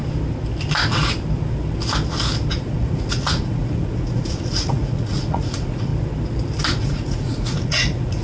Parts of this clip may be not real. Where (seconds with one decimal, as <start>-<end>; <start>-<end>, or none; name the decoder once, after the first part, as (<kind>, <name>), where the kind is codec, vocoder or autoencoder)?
2.5-5.9 (vocoder, Vocos); 6.8-8.2